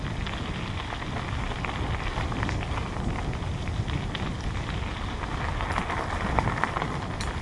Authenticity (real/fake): real